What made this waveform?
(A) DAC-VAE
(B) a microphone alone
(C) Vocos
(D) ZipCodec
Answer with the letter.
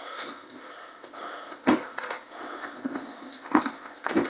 D